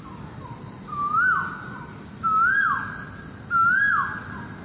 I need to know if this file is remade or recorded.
recorded